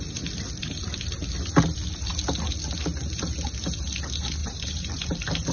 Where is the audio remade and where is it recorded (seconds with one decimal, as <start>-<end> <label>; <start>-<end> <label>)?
0.0-4.4 recorded; 4.4-5.0 remade; 5.0-5.5 recorded

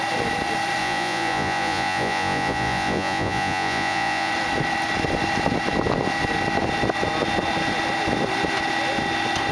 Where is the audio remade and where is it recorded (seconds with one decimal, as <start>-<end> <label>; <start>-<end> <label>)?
0.0-0.8 recorded; 0.8-4.3 remade; 4.3-9.5 recorded

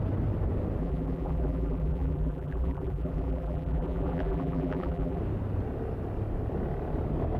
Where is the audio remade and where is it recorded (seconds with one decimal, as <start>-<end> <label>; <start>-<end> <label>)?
0.0-0.8 recorded; 0.8-5.2 remade; 5.2-7.4 recorded

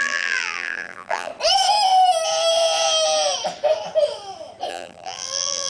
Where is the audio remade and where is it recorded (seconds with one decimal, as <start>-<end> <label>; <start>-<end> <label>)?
0.0-1.3 remade; 1.3-4.7 recorded; 4.7-5.7 remade

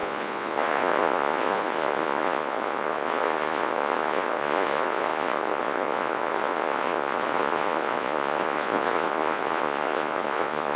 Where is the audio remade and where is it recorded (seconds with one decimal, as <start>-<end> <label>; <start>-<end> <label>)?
0.0-10.8 remade